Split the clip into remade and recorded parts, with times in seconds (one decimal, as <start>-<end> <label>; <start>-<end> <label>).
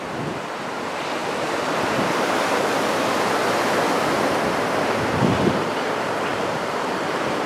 0.0-6.3 recorded; 6.3-7.5 remade